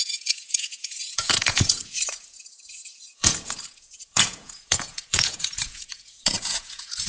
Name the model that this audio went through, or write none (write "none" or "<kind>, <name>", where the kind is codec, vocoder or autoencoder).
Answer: vocoder, Vocos